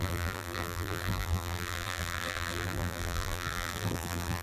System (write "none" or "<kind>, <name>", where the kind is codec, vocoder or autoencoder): vocoder, BigVGAN v2